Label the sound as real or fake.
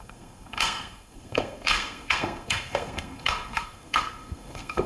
fake